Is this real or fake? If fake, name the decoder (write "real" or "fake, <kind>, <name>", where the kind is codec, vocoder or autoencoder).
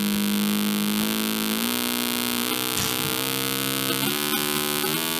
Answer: real